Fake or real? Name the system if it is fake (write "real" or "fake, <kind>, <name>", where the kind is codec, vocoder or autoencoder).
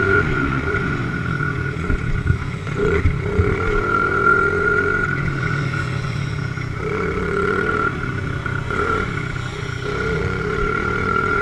fake, vocoder, Vocos